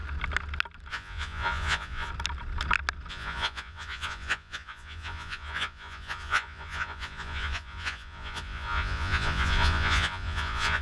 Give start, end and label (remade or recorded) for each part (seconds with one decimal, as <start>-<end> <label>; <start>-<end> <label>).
0.0-0.9 recorded; 0.9-2.1 remade; 2.1-3.1 recorded; 3.1-10.8 remade

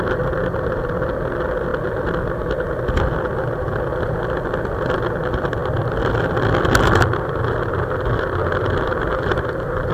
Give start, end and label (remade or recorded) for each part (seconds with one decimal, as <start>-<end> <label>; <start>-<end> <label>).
0.0-9.9 recorded